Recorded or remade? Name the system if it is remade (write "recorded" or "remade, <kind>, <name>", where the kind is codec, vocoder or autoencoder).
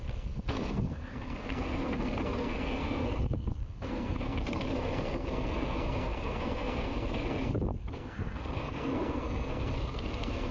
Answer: remade, codec, SNAC